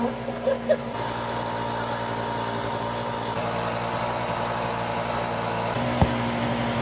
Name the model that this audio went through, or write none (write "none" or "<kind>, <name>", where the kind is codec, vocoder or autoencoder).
none